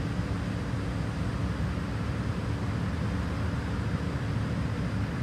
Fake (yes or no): no